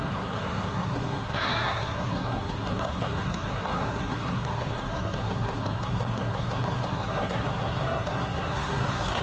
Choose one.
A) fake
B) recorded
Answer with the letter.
A